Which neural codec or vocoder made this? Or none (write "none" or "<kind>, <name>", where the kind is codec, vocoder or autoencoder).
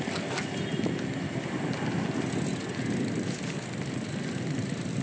none